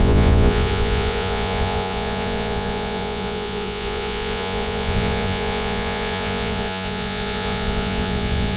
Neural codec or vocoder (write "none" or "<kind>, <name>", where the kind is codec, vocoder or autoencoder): vocoder, Vocos